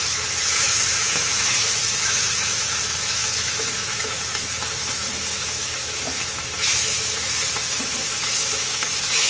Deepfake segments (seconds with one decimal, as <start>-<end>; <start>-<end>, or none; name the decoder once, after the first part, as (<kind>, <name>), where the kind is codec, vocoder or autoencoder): 0.0-9.3 (autoencoder, DAC-VAE)